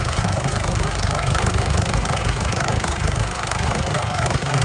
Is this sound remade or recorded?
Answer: remade